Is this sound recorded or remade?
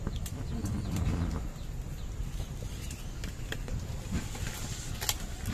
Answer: recorded